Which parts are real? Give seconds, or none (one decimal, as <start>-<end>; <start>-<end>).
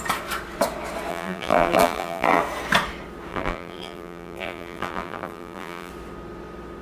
0.0-1.1; 2.4-3.3; 5.9-6.8